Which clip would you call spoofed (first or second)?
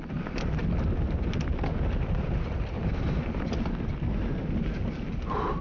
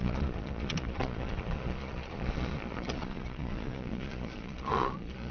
second